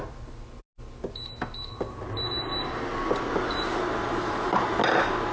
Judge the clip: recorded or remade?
recorded